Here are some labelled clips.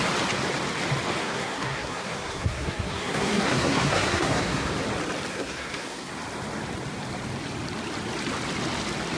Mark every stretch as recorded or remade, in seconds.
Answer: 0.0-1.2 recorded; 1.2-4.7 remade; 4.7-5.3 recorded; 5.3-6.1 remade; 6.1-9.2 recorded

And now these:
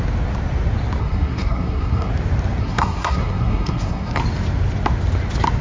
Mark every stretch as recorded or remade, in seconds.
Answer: 0.0-1.0 recorded; 1.0-2.1 remade; 2.1-2.6 recorded; 2.6-4.2 remade; 4.2-5.6 recorded

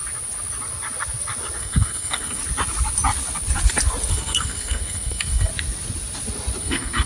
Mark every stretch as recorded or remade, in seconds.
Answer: 0.0-1.6 recorded; 1.6-2.4 remade; 2.4-4.1 recorded; 4.1-5.5 remade; 5.5-6.6 recorded; 6.6-7.1 remade